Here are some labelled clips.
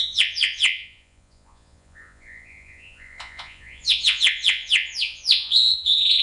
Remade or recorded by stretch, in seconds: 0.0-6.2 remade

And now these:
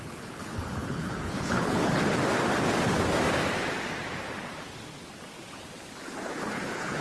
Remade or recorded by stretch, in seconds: 0.0-2.2 remade; 2.2-6.4 recorded; 6.4-7.0 remade

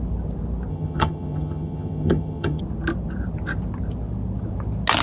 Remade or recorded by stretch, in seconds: 0.0-0.7 recorded; 0.7-2.6 remade; 2.6-5.0 recorded

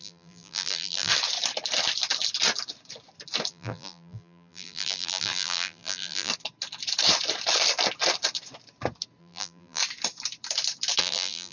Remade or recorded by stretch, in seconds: 0.0-1.1 remade; 1.1-3.5 recorded; 3.5-6.3 remade; 6.3-9.2 recorded; 9.2-9.8 remade; 9.8-11.0 recorded; 11.0-11.5 remade

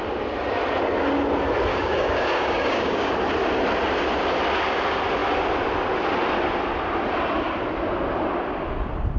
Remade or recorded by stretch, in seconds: 0.0-1.7 recorded; 1.7-3.1 remade; 3.1-9.2 recorded

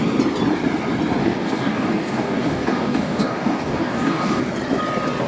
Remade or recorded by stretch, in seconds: 0.0-1.2 recorded; 1.2-4.4 remade; 4.4-5.3 recorded

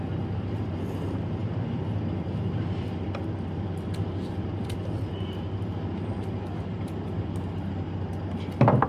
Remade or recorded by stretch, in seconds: 0.0-1.4 recorded; 1.4-5.2 remade; 5.2-6.7 recorded; 6.7-8.1 remade; 8.1-8.9 recorded